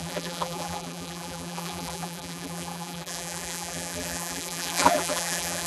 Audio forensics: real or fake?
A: fake